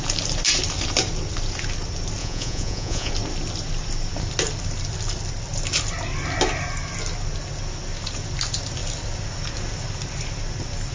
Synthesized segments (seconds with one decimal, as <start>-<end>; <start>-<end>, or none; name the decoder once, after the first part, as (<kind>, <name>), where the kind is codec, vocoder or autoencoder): 2.2-3.1 (vocoder, Vocos)